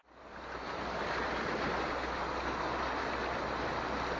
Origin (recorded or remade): recorded